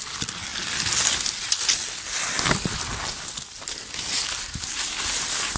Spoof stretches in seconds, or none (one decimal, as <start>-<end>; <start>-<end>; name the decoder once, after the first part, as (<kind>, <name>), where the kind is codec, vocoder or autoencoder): none